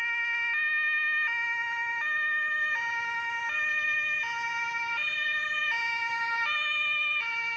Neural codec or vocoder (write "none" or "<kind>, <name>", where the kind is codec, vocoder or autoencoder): none